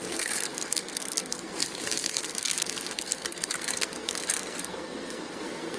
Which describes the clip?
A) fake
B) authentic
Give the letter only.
A